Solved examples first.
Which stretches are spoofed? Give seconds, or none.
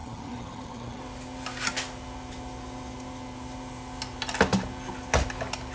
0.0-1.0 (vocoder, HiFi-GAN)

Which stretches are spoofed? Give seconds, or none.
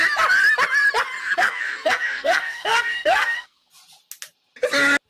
1.2-3.7 (codec, SNAC)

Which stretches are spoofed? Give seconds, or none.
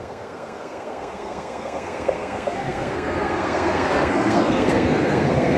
0.0-5.6 (codec, SNAC)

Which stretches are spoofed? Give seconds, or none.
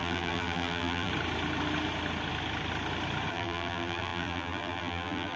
0.0-1.1 (vocoder, BigVGAN v2); 3.3-5.4